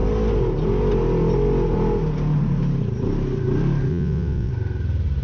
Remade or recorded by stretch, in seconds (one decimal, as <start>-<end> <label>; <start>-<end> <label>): 0.0-3.9 recorded; 3.9-4.5 remade; 4.5-5.2 recorded